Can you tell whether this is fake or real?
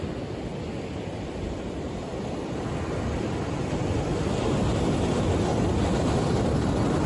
real